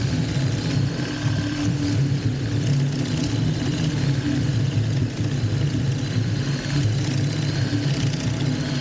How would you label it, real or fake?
real